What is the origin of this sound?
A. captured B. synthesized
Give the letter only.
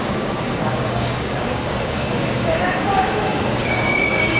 B